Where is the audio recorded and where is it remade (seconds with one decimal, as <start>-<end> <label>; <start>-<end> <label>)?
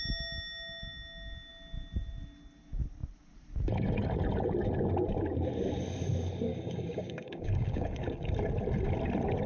0.0-6.5 recorded; 6.5-8.3 remade; 8.3-9.5 recorded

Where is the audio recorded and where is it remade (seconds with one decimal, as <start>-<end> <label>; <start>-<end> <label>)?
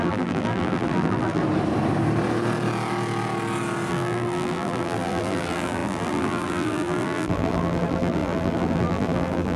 0.0-1.4 remade; 1.4-3.9 recorded; 3.9-9.6 remade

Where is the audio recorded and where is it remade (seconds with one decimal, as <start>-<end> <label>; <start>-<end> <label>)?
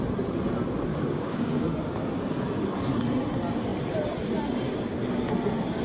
0.0-0.9 recorded; 0.9-1.9 remade; 1.9-5.8 recorded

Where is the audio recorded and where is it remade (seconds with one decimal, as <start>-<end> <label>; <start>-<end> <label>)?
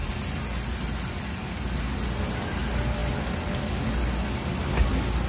0.0-5.3 recorded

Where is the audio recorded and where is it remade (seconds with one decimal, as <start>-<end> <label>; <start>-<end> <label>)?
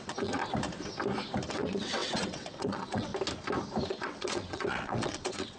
0.0-0.4 remade; 0.4-1.5 recorded; 1.5-3.1 remade; 3.1-3.9 recorded; 3.9-5.6 remade